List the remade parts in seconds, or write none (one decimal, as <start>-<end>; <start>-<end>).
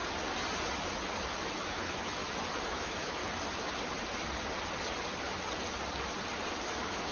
1.3-2.2; 2.7-3.2; 6.6-7.1